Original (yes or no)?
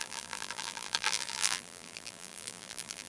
no